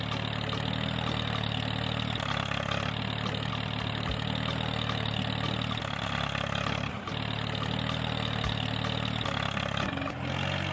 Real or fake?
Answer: real